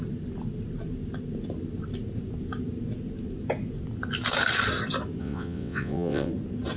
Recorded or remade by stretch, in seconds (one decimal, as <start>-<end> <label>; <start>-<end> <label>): 0.0-5.2 recorded; 5.2-6.3 remade; 6.3-6.8 recorded